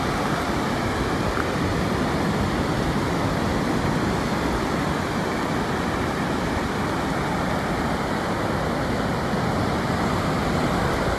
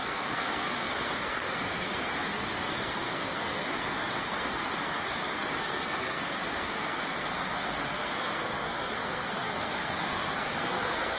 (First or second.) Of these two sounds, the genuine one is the first